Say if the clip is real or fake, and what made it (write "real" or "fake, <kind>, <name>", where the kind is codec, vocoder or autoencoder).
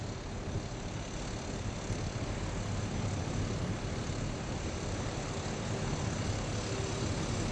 real